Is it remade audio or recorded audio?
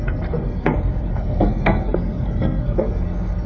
remade